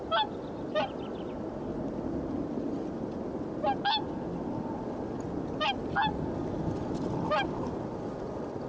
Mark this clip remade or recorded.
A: recorded